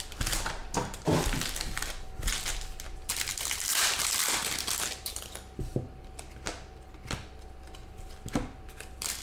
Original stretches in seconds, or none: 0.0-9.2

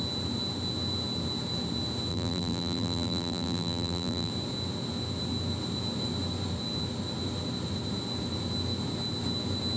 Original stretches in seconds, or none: 0.0-2.1; 4.3-9.8

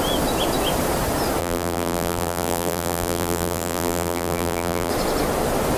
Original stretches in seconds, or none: 0.0-1.4; 4.9-5.8

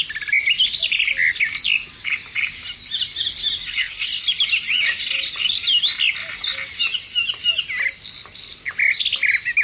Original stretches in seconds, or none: 0.0-9.6